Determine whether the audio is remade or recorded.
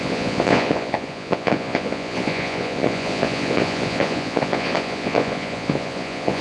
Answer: remade